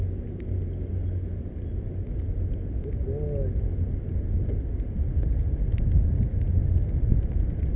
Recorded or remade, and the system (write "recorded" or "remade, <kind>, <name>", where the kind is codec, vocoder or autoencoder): recorded